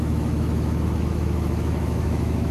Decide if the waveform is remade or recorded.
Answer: remade